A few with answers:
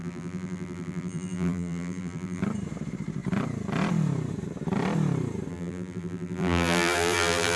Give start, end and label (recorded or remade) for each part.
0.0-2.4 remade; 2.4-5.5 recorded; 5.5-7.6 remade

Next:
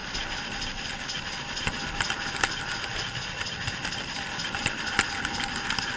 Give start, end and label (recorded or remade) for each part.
0.0-6.0 recorded